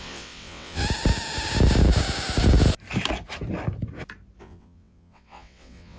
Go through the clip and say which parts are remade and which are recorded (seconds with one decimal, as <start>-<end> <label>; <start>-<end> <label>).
0.0-0.8 remade; 0.8-4.4 recorded; 4.4-6.0 remade